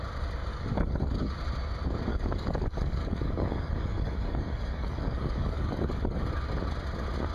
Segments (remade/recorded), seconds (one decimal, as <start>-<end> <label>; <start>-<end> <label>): 0.0-0.5 recorded; 0.5-1.4 remade; 1.4-2.1 recorded; 2.1-6.3 remade; 6.3-7.3 recorded